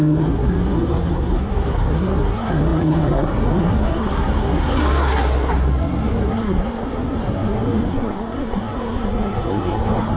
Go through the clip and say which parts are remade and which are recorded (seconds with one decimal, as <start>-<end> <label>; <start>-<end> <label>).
0.0-10.2 remade